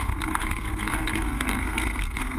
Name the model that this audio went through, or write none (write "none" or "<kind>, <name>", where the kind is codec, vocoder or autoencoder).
codec, SNAC